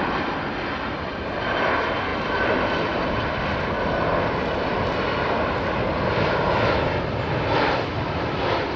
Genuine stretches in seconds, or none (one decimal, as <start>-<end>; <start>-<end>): 0.0-8.8